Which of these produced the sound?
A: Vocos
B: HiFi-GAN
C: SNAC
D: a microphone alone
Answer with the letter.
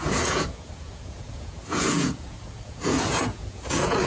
A